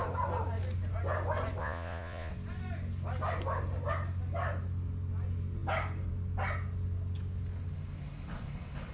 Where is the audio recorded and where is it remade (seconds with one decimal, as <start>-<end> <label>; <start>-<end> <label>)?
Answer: 0.0-1.6 recorded; 1.6-2.3 remade; 2.3-8.9 recorded